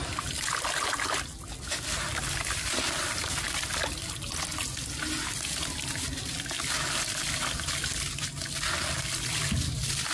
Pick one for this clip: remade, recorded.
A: recorded